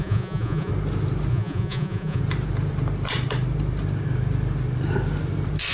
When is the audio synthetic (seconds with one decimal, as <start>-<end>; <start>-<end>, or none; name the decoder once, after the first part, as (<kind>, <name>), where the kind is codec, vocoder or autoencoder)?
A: 0.0-0.7 (vocoder, Vocos); 1.3-2.2